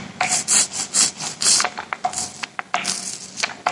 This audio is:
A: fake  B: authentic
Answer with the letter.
B